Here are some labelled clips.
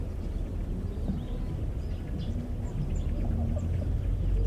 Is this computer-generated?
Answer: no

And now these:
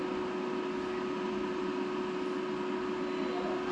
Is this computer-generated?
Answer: no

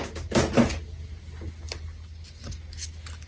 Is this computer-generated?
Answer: no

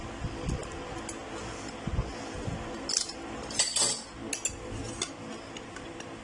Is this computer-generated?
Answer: no